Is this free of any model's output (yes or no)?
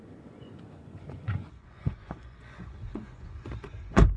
no